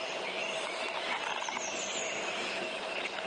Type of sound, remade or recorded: remade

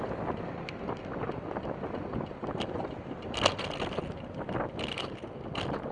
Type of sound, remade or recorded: recorded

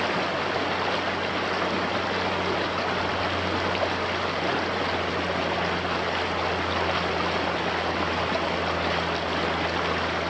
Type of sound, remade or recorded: recorded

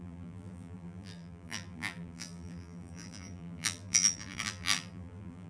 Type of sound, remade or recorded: remade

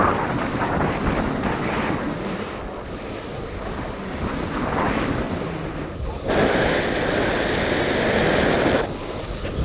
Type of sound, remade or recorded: recorded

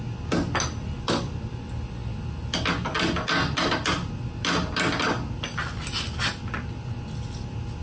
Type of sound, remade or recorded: recorded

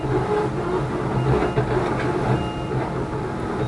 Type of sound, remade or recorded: recorded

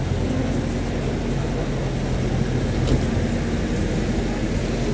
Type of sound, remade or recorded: recorded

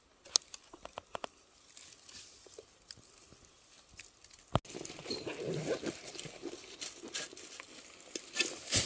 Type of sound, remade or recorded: recorded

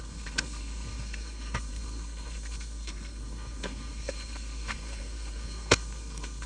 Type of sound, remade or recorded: remade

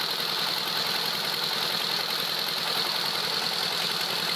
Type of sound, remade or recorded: recorded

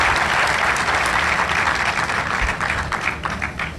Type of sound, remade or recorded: recorded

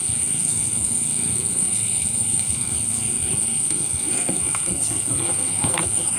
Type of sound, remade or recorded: remade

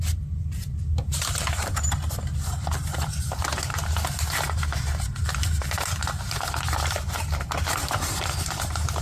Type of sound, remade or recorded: remade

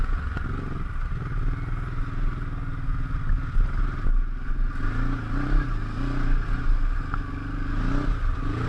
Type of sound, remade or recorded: recorded